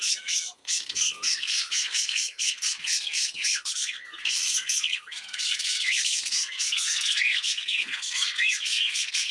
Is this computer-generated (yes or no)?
yes